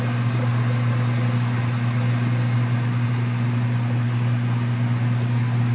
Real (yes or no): yes